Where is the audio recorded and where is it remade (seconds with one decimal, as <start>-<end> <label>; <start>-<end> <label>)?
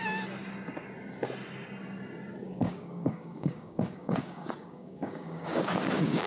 0.0-2.4 recorded; 2.4-6.3 remade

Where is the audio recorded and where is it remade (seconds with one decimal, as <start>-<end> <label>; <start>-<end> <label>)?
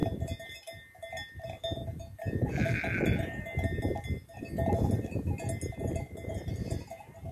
0.0-7.3 recorded